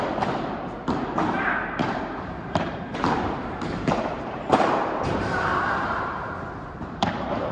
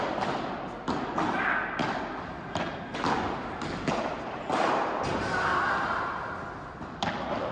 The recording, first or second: second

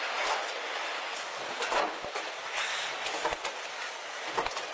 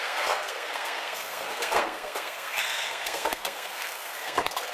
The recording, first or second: first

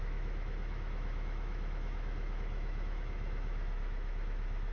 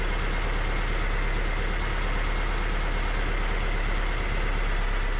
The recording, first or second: second